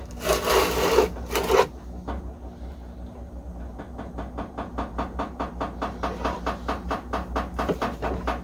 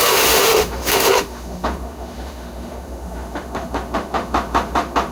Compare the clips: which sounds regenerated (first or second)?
second